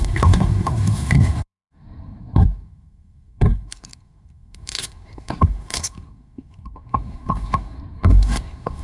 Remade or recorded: remade